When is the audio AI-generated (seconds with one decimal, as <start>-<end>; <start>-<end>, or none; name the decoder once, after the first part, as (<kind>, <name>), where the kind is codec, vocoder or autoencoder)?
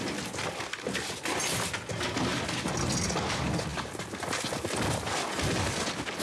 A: none